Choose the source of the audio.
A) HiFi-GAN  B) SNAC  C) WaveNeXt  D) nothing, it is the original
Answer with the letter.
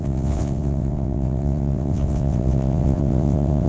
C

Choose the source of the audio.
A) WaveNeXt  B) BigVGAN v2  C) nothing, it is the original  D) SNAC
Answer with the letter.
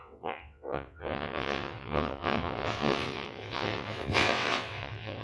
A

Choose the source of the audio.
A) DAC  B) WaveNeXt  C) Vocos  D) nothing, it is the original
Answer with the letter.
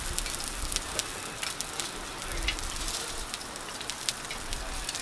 D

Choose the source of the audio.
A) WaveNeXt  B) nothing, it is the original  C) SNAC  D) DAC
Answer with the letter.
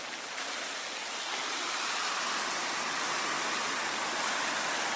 B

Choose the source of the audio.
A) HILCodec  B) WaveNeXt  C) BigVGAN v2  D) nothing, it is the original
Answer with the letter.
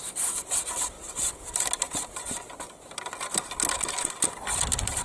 D